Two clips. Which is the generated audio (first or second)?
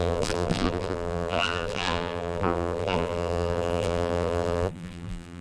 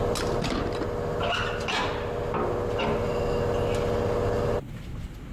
first